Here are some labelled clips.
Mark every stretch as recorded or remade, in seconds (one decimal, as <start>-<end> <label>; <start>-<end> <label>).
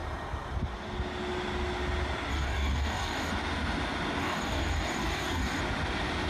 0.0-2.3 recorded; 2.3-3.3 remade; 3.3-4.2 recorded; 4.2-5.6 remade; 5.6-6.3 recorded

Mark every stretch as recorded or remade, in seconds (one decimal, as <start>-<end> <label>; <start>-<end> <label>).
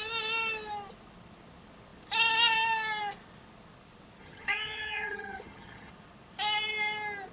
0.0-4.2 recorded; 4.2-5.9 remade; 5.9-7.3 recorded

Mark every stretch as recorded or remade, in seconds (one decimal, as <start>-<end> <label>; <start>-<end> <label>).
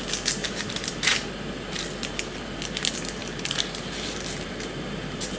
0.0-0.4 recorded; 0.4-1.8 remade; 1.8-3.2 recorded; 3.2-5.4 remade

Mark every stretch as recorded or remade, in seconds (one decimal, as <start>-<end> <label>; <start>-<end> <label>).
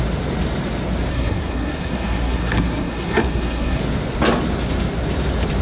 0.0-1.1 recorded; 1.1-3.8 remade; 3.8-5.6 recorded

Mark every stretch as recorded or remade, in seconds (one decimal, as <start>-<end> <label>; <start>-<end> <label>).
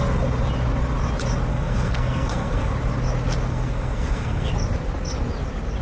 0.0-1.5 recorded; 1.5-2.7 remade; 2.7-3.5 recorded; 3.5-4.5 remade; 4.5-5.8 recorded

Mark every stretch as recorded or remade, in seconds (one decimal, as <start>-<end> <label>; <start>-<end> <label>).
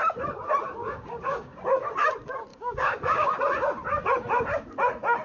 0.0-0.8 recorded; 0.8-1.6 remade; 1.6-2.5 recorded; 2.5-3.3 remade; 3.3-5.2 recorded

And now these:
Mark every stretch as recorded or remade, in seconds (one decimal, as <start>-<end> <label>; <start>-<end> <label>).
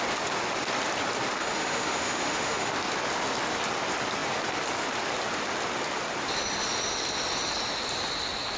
0.0-1.4 recorded; 1.4-2.7 remade; 2.7-8.6 recorded